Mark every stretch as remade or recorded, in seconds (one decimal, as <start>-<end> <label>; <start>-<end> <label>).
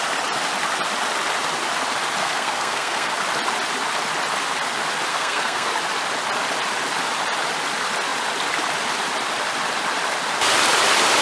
0.0-2.2 recorded; 2.2-3.1 remade; 3.1-5.1 recorded; 5.1-5.7 remade; 5.7-11.2 recorded